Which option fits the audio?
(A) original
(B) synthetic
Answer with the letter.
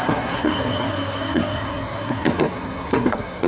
B